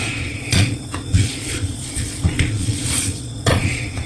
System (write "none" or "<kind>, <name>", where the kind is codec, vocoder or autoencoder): vocoder, Vocos